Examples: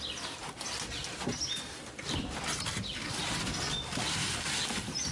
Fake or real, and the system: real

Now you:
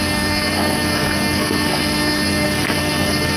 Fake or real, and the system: fake, codec, SNAC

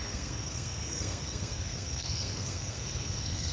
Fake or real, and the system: fake, codec, SNAC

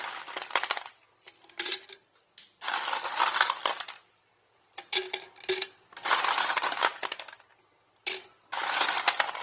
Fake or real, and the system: real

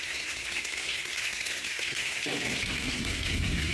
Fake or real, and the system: fake, codec, SNAC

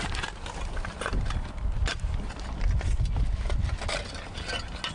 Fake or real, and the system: real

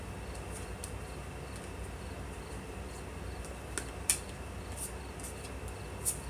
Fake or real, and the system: real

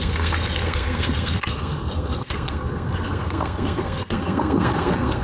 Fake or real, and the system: fake, codec, SNAC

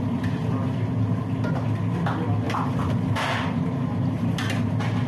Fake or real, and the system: real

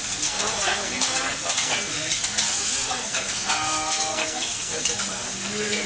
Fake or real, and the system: fake, codec, SNAC